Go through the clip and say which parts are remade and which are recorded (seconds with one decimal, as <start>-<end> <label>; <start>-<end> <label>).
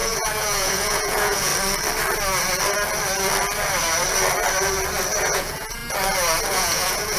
0.0-1.5 remade; 1.5-5.2 recorded; 5.2-5.8 remade; 5.8-6.5 recorded; 6.5-7.2 remade